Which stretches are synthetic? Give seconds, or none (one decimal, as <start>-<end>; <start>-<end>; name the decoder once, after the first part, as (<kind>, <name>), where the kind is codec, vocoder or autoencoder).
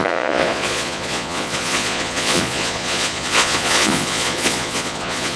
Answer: 0.0-5.4 (vocoder, Vocos)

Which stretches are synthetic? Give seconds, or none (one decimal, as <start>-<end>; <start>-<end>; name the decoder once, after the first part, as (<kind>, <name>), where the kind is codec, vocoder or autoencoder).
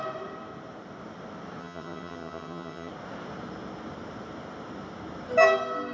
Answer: 1.6-2.9 (vocoder, HiFi-GAN)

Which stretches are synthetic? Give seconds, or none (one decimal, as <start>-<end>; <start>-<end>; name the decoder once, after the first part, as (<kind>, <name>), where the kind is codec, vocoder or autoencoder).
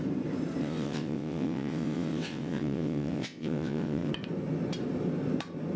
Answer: 0.6-4.1 (vocoder, WaveNeXt)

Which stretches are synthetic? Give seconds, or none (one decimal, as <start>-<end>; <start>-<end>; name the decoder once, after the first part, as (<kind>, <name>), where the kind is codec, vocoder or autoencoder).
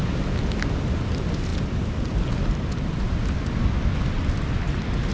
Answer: none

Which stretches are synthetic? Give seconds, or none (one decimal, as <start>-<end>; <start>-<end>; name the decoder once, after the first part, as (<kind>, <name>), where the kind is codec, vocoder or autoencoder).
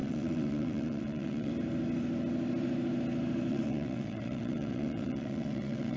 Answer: 0.0-1.5 (vocoder, WaveNeXt); 3.5-6.0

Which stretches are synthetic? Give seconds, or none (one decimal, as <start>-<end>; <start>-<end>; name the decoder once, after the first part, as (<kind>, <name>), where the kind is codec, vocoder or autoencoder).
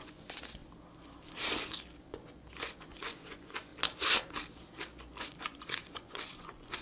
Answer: 0.0-0.6 (vocoder, Vocos); 2.0-3.7; 5.2-6.8